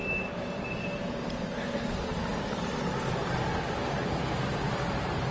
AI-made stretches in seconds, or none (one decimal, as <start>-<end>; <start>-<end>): 0.0-1.3; 2.1-4.2